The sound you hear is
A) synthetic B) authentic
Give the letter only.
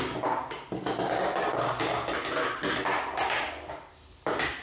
B